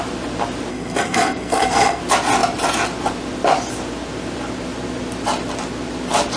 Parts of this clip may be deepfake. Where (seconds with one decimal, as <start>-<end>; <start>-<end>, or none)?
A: 0.7-2.0